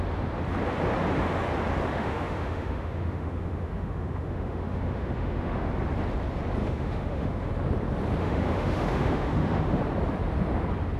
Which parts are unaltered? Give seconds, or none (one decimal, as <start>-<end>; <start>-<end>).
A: 0.0-1.9; 5.7-6.6; 7.5-8.2; 9.8-11.0